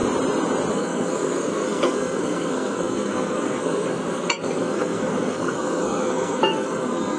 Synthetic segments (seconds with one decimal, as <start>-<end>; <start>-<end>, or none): 0.7-7.2

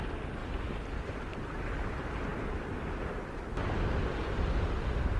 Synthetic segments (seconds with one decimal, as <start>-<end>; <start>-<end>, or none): none

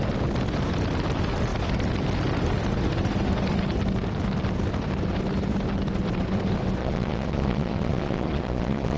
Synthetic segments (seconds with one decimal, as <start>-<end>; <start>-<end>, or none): 6.8-9.0

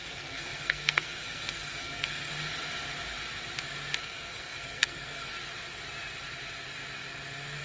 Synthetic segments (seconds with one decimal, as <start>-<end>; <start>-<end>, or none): 0.0-2.3; 4.0-5.3

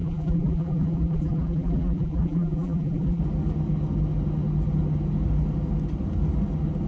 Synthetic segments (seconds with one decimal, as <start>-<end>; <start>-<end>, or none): 0.0-3.2

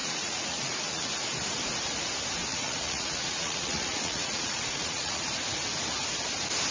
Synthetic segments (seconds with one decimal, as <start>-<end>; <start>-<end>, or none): 0.0-1.1; 2.5-5.3

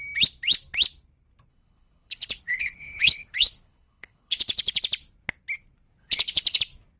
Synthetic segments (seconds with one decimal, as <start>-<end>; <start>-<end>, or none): 1.5-4.8; 6.0-6.6

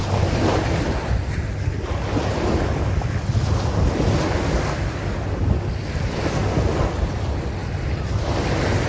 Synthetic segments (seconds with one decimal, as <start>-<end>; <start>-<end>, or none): none